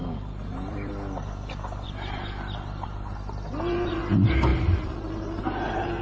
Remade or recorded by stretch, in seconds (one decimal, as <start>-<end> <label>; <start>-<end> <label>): 0.0-0.9 remade; 0.9-6.0 recorded

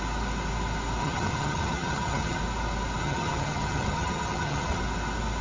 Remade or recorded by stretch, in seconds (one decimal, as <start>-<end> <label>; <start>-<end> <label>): 0.0-1.0 recorded; 1.0-2.4 remade; 2.4-3.0 recorded; 3.0-4.8 remade; 4.8-5.4 recorded